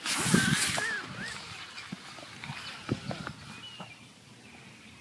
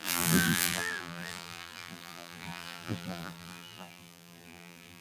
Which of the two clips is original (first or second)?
first